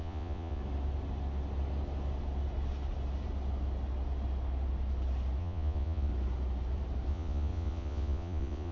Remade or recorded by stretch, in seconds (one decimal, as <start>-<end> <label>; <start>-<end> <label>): 0.0-0.6 remade; 0.6-5.4 recorded; 5.4-6.1 remade; 6.1-7.1 recorded; 7.1-8.7 remade